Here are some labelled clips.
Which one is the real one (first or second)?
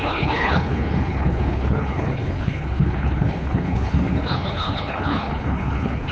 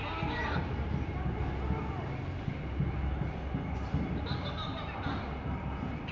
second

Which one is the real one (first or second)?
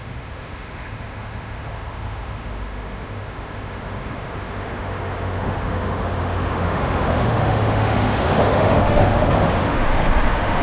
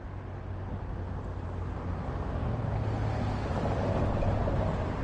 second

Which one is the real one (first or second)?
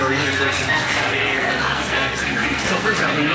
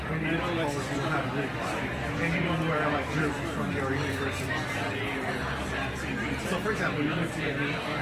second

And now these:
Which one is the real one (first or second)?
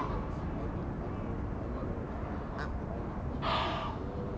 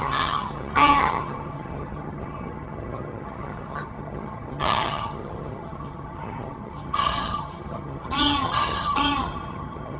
first